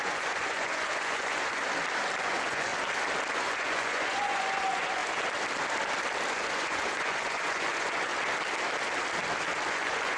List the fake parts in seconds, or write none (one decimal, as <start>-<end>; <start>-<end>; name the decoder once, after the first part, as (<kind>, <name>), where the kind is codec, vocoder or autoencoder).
0.0-1.6 (vocoder, Vocos); 2.2-2.7; 3.3-5.0; 6.3-8.1; 9.7-10.2